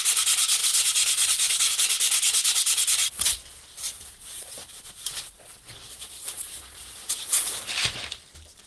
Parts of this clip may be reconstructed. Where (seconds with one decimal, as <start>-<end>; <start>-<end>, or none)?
0.6-1.7; 3.0-7.7